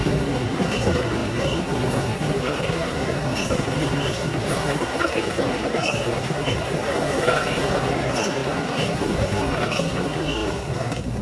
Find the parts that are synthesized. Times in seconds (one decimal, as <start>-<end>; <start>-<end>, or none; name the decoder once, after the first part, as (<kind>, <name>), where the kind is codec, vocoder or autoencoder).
0.0-11.2 (codec, SNAC)